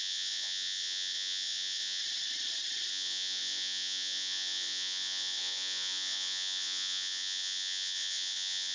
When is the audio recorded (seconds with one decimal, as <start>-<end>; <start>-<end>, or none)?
2.0-2.9

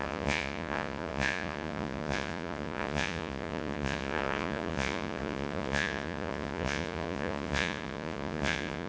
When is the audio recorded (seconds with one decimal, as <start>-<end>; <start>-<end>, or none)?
none

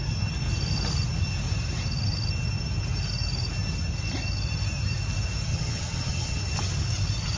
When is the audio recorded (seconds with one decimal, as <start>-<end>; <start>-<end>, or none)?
0.0-5.5; 6.4-7.4

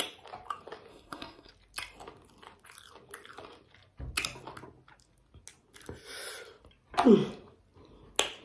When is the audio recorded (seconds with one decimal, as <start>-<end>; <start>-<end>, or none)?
0.0-0.9; 1.5-8.4

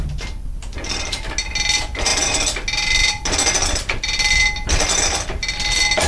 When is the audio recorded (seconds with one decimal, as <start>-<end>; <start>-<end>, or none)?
0.0-6.1